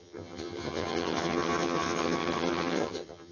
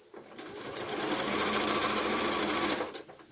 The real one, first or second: second